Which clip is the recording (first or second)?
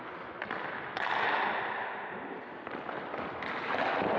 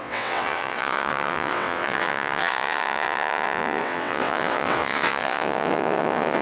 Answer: first